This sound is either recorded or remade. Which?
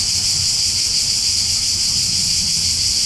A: recorded